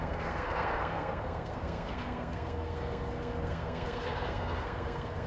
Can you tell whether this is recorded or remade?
remade